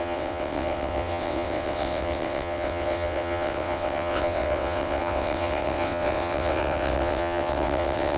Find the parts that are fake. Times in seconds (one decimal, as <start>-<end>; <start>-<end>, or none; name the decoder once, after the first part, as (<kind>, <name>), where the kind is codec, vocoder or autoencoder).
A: 0.0-8.2 (vocoder, WaveNeXt)